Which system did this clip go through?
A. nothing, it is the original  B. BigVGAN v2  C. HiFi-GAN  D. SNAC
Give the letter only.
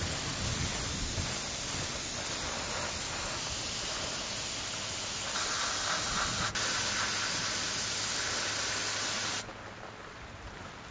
A